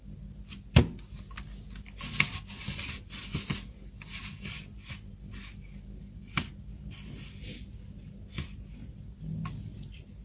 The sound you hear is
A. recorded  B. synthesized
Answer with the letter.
A